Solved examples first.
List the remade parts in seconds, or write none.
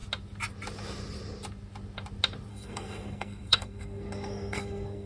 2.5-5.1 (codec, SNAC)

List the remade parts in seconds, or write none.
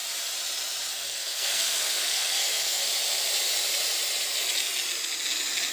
0.9-2.8 (codec, SNAC)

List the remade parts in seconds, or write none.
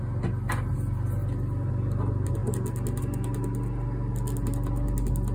none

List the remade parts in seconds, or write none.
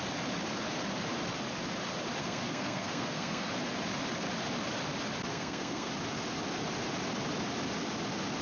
2.2-3.5 (codec, SNAC); 5.3-5.9